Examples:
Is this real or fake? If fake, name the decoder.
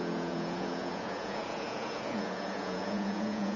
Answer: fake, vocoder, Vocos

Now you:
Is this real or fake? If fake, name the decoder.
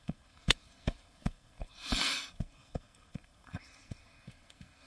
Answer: fake, codec, SNAC